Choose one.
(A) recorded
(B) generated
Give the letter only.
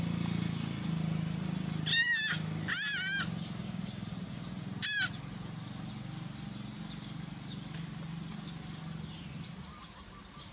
A